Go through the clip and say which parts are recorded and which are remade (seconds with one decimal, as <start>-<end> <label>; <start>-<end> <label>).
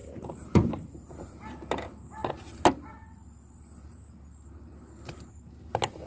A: 0.0-1.3 remade; 1.3-6.1 recorded